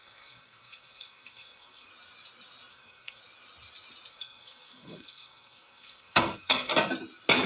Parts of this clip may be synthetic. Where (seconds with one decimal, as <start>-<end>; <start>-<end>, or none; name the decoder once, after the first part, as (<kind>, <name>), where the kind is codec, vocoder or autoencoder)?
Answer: 0.0-1.9 (codec, SNAC); 2.7-3.2; 4.1-6.7